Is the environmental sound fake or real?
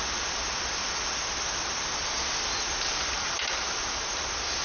real